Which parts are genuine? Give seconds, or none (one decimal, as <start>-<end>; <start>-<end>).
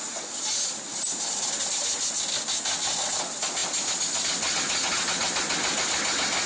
0.0-6.5